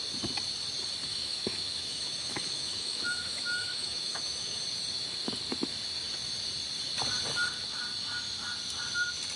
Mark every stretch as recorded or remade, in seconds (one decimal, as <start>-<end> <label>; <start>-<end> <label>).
0.0-1.1 recorded; 1.1-4.6 remade; 4.6-9.4 recorded